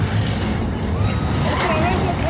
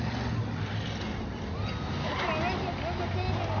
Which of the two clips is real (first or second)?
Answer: second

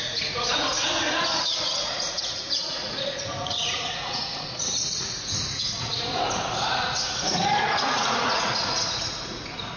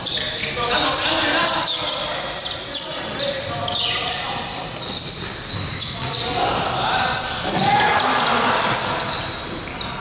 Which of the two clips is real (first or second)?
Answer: second